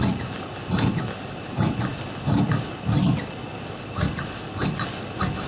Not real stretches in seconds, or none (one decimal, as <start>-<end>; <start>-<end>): none